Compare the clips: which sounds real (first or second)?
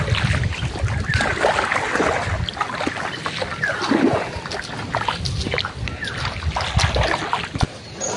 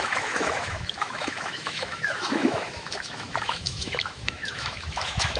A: first